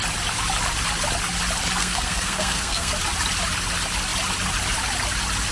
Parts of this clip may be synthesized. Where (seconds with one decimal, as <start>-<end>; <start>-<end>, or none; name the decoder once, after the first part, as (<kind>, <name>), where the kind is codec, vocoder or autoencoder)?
1.8-2.9 (codec, SNAC)